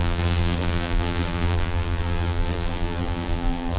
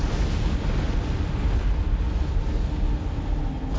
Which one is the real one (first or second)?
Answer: second